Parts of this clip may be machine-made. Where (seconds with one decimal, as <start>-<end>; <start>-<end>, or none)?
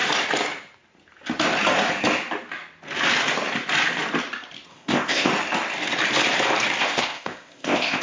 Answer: 4.7-5.3; 6.8-8.0